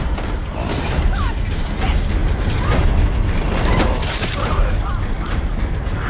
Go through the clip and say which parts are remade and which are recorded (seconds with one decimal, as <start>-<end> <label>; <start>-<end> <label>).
0.0-2.2 recorded; 2.2-2.9 remade; 2.9-4.0 recorded; 4.0-6.1 remade